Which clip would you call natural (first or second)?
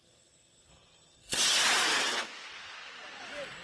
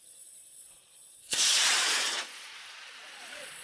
first